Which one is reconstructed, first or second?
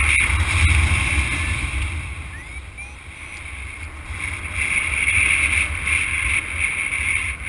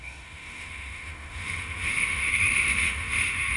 second